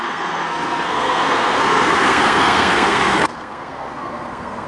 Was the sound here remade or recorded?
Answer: remade